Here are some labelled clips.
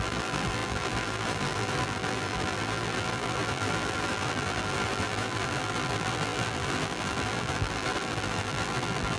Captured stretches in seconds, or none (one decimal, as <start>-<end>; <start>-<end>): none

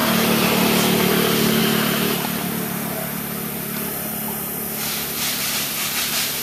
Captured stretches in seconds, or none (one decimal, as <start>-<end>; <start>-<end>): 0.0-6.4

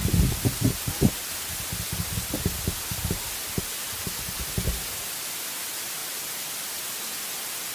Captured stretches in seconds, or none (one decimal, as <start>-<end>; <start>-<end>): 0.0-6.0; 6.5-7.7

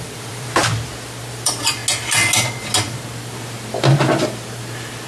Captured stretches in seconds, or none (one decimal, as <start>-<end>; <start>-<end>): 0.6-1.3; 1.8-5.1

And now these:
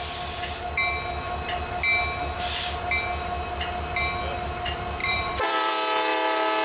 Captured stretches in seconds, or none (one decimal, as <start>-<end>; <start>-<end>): 0.0-5.0; 5.7-6.6